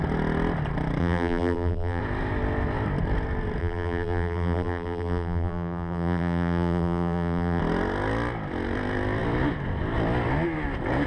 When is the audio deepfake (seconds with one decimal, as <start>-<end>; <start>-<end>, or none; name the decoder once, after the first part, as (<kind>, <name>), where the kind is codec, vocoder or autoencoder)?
1.0-2.0 (vocoder, BigVGAN v2); 3.6-7.6